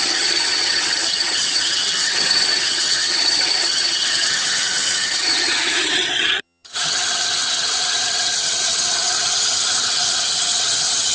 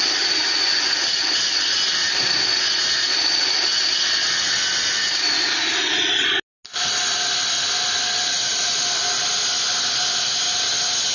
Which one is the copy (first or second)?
first